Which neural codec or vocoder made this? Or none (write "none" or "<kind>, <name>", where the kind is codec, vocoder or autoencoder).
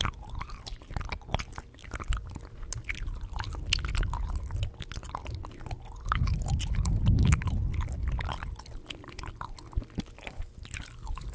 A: none